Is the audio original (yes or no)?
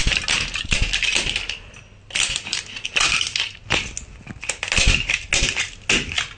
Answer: yes